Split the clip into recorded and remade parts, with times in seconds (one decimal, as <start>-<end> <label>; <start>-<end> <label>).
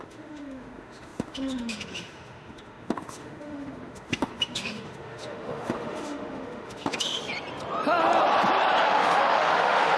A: 0.0-7.2 remade; 7.2-8.8 recorded; 8.8-10.0 remade